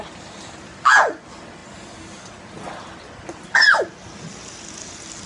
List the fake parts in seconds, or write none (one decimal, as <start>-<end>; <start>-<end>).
none